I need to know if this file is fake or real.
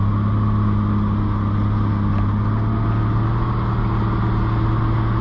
real